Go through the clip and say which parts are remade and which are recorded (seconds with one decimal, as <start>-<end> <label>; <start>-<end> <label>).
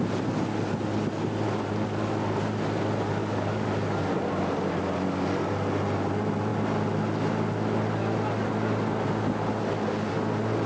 0.0-3.2 recorded; 3.2-3.7 remade; 3.7-10.7 recorded